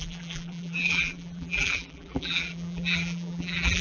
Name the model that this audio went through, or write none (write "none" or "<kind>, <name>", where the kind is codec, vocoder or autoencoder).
vocoder, BigVGAN v2